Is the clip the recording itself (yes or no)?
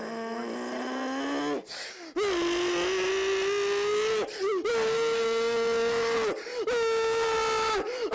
yes